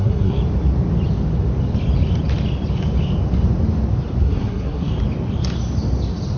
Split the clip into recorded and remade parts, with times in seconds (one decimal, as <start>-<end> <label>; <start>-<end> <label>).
0.0-0.4 remade; 0.4-4.2 recorded; 4.2-4.9 remade; 4.9-6.4 recorded